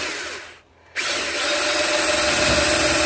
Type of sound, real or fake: real